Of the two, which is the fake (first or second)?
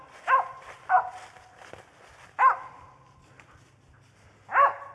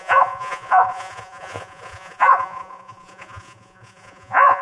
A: second